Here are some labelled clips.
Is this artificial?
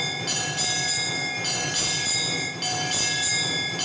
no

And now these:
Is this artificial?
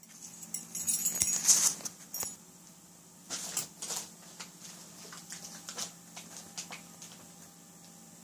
no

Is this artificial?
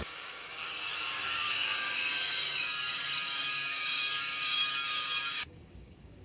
yes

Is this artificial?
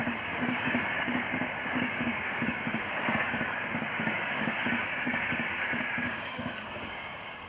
yes